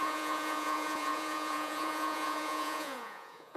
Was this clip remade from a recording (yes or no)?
yes